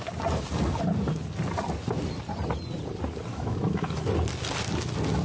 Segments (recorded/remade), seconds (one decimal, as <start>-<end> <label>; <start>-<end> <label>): 0.0-3.3 recorded; 3.3-4.0 remade; 4.0-5.2 recorded